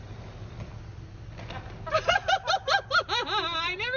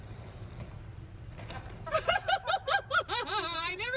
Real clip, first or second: first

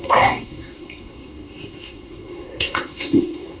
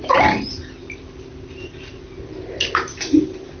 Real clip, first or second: second